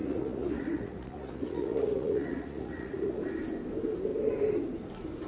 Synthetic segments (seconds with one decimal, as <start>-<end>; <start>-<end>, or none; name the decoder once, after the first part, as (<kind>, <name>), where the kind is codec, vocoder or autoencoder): 0.0-3.2 (vocoder, Vocos)